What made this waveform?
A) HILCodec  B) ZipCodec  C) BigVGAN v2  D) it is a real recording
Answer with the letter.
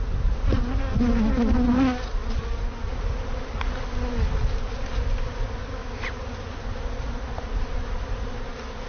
D